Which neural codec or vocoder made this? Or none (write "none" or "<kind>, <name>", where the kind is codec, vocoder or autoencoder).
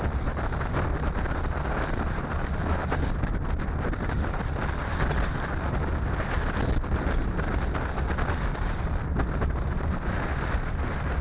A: none